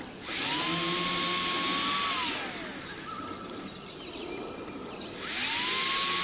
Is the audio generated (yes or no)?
no